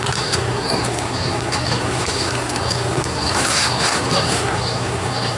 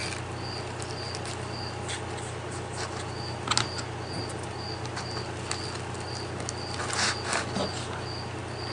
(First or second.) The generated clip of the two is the first